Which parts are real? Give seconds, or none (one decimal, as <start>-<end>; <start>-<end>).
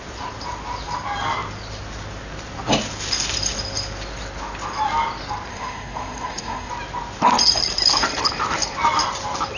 0.0-5.5; 6.7-9.6